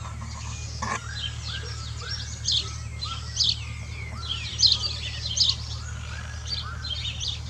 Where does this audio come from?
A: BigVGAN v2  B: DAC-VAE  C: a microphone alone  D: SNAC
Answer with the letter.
C